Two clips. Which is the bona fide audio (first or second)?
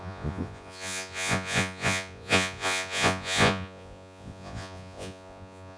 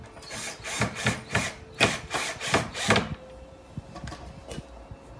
second